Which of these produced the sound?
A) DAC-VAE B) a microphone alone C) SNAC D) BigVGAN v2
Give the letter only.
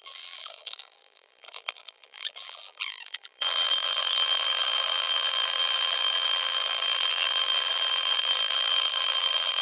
D